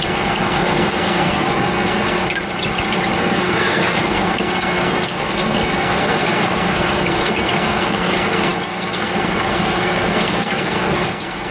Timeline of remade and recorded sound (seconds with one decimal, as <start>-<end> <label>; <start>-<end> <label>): 0.0-2.2 remade; 2.2-3.2 recorded; 3.2-11.5 remade